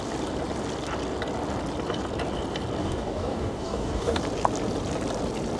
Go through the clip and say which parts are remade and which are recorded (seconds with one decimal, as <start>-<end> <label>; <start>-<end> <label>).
0.0-2.8 recorded; 2.8-4.2 remade; 4.2-5.6 recorded